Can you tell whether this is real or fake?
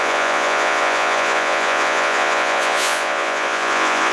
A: fake